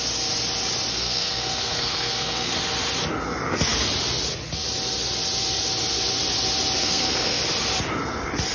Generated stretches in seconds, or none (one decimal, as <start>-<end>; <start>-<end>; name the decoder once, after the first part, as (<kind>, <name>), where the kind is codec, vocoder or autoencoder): 0.9-2.6 (codec, SNAC); 6.8-7.4